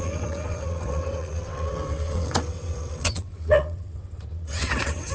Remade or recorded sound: remade